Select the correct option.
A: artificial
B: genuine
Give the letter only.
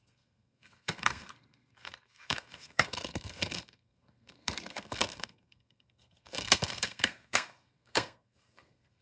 A